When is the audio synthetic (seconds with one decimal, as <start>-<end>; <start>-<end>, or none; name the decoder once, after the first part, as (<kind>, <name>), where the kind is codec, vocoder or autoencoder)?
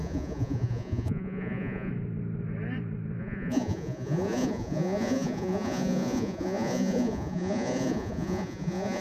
0.0-1.9 (vocoder, Vocos); 3.2-9.0